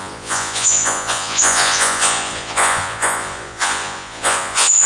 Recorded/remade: remade